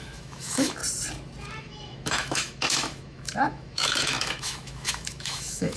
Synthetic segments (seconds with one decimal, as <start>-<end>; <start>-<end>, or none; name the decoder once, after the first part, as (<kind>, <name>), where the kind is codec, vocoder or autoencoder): 0.0-0.8 (autoencoder, DAC-VAE); 1.6-5.8

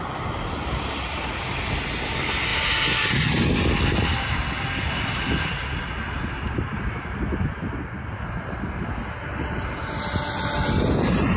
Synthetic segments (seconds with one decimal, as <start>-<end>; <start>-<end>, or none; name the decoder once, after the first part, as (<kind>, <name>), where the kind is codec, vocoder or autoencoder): none

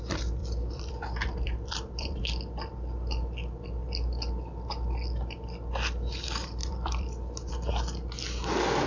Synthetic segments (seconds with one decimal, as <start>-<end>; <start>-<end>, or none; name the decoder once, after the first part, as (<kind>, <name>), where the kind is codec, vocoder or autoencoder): 0.4-2.2 (vocoder, BigVGAN v2); 6.6-7.5